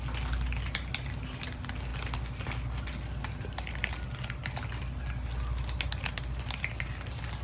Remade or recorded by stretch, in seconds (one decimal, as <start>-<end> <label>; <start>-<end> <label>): 0.0-7.4 recorded